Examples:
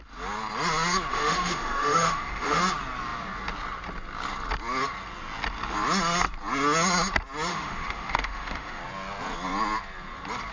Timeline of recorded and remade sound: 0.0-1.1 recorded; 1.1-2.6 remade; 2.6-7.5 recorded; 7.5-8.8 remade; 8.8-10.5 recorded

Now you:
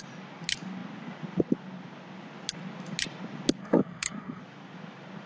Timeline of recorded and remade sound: 0.0-3.6 recorded; 3.6-4.4 remade; 4.4-5.3 recorded

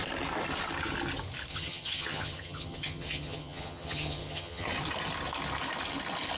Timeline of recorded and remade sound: 0.0-1.5 recorded; 1.5-4.7 remade; 4.7-6.4 recorded

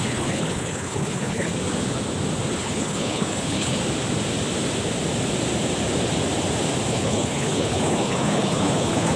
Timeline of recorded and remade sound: 0.0-1.5 remade; 1.5-2.5 recorded; 2.5-3.8 remade; 3.8-6.9 recorded; 6.9-9.2 remade

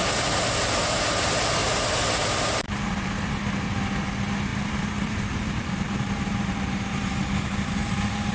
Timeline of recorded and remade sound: 0.0-0.7 remade; 0.7-1.6 recorded; 1.6-3.3 remade; 3.3-4.5 recorded; 4.5-7.2 remade; 7.2-7.8 recorded; 7.8-8.3 remade

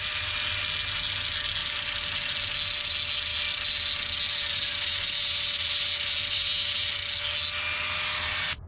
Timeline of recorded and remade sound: 0.0-8.7 recorded

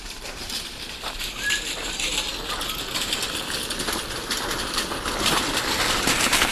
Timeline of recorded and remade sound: 0.0-2.3 remade; 2.3-5.9 recorded; 5.9-6.5 remade